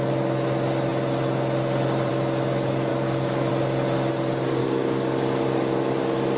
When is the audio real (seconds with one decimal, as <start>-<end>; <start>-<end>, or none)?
0.0-2.9; 3.5-4.6